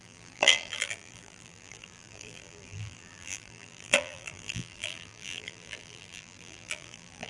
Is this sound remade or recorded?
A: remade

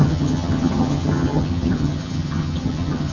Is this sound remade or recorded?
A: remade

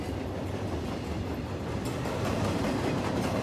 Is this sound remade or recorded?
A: recorded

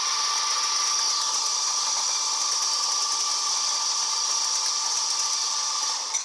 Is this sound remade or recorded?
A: recorded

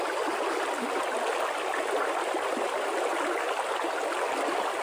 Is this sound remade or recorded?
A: recorded